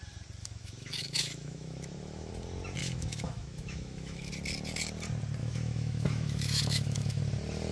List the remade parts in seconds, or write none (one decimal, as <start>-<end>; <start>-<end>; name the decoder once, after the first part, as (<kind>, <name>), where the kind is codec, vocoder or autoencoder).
0.4-2.3 (autoencoder, DAC-VAE); 2.8-4.3; 5.4-7.2